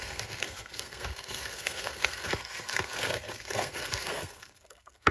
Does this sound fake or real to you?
fake